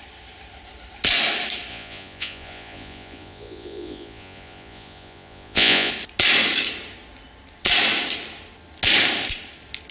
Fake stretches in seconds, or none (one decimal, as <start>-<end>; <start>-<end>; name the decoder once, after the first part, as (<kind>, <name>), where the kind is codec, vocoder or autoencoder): 1.7-5.9 (vocoder, Vocos)